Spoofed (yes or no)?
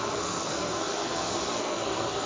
yes